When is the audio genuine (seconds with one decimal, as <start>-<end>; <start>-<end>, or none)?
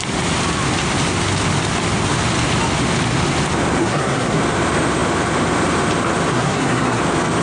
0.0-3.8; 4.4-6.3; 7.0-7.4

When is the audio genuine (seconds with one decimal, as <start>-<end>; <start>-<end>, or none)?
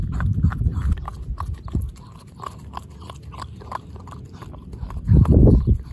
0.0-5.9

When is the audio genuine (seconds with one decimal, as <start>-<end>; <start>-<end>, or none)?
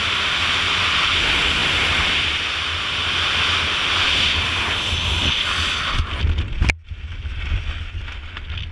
0.0-8.7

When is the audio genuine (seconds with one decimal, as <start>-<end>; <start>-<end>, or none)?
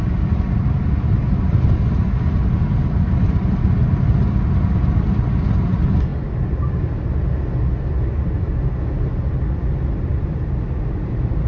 0.0-11.5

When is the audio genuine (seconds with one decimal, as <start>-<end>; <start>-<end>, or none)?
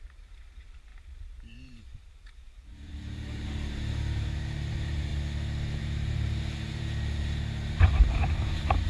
5.1-5.8